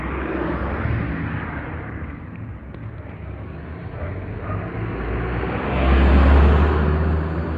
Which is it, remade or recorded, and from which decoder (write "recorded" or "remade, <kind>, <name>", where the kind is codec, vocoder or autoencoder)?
recorded